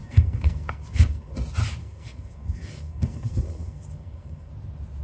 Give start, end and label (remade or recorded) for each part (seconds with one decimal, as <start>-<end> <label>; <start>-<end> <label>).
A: 0.0-1.3 remade; 1.3-1.8 recorded; 1.8-4.5 remade; 4.5-5.0 recorded